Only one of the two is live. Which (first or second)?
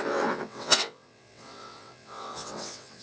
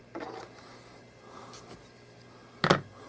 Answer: second